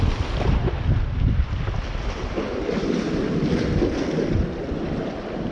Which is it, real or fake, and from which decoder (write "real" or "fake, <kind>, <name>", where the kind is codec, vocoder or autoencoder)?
real